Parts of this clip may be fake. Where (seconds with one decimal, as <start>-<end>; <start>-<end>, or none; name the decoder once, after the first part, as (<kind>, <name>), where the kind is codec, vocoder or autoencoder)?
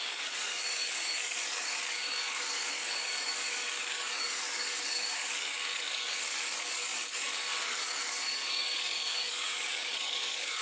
0.0-10.6 (codec, DAC)